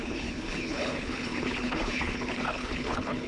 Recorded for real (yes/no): no